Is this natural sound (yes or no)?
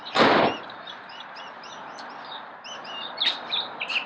yes